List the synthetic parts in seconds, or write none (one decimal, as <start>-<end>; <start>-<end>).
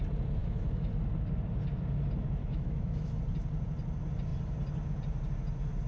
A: 0.4-0.9; 2.4-3.2